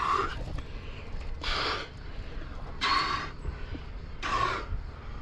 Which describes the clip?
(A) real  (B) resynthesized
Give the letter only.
B